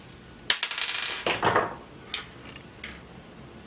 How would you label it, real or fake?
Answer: real